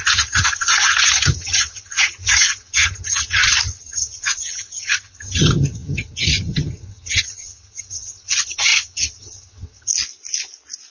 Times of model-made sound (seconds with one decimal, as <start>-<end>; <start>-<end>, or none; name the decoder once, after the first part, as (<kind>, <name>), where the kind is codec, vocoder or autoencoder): 0.0-9.9 (vocoder, HiFi-GAN)